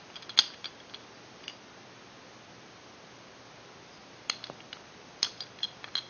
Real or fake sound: real